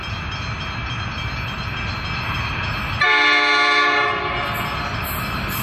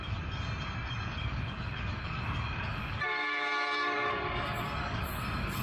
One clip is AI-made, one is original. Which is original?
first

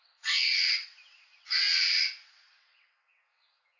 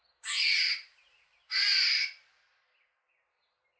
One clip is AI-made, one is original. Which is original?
second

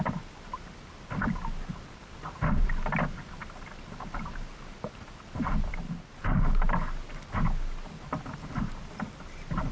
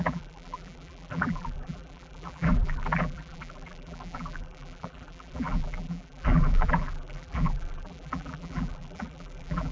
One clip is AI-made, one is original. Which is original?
first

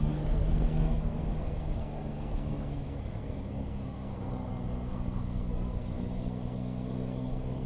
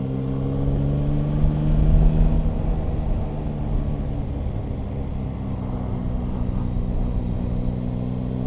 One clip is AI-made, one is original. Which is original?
second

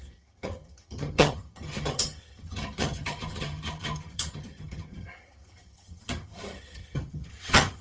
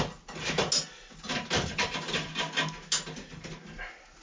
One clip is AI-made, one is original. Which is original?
second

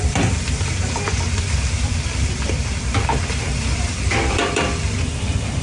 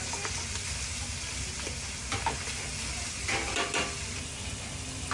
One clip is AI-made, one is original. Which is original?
second